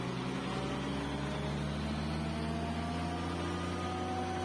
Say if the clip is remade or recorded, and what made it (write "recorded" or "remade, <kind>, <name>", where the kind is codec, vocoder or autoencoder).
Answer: recorded